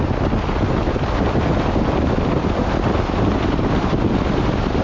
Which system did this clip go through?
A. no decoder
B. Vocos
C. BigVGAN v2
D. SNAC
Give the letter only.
A